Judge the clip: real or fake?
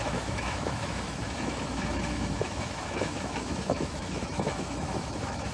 fake